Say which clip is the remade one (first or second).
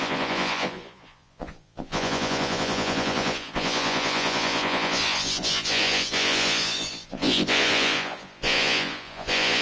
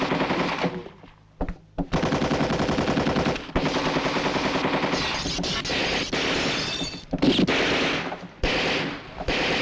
first